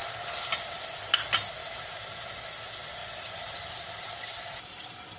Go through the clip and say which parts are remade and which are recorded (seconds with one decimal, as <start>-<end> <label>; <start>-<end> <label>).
0.0-1.0 remade; 1.0-1.6 recorded; 1.6-2.4 remade; 2.4-3.0 recorded; 3.0-5.2 remade

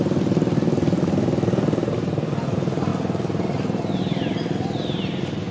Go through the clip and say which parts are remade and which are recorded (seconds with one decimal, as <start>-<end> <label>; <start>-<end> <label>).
0.0-2.9 remade; 2.9-4.0 recorded; 4.0-5.5 remade

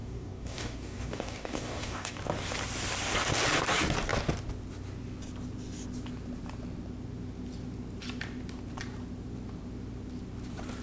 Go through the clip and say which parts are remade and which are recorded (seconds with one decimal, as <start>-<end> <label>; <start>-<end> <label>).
0.0-2.2 remade; 2.2-10.8 recorded

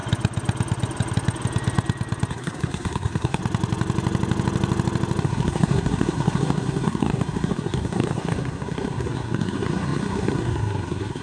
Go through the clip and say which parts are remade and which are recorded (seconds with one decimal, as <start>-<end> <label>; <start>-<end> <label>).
0.0-2.3 recorded; 2.3-3.4 remade; 3.4-5.2 recorded; 5.2-11.2 remade

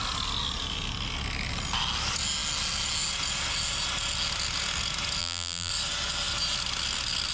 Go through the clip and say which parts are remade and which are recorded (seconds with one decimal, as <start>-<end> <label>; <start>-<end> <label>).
0.0-5.2 recorded; 5.2-5.7 remade; 5.7-7.3 recorded

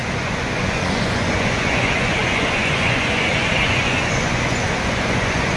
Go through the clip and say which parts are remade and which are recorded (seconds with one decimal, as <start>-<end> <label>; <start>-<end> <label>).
0.0-5.6 remade